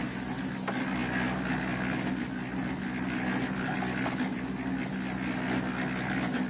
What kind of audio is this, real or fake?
real